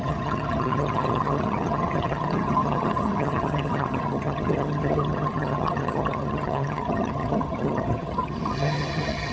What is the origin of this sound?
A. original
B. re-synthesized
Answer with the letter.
B